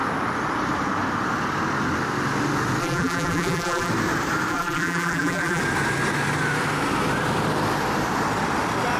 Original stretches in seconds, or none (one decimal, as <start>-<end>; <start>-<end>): 0.0-2.8; 3.9-4.5; 5.6-9.0